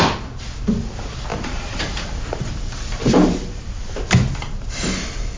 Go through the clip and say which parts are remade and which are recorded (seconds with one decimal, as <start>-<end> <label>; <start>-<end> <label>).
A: 0.0-1.3 recorded; 1.3-3.6 remade; 3.6-4.2 recorded; 4.2-4.9 remade; 4.9-5.4 recorded

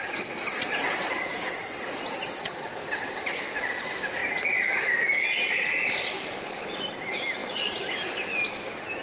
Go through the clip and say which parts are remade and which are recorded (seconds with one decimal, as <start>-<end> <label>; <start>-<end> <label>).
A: 0.0-1.3 recorded; 1.3-2.4 remade; 2.4-9.0 recorded

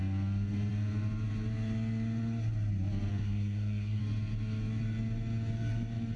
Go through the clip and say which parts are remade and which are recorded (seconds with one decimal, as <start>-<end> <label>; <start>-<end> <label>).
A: 0.0-3.1 recorded; 3.1-4.0 remade; 4.0-6.2 recorded

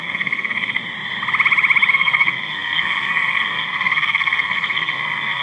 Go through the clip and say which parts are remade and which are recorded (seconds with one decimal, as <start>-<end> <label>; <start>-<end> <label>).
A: 0.0-0.8 remade; 0.8-1.9 recorded; 1.9-5.4 remade